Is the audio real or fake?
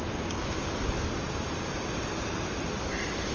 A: real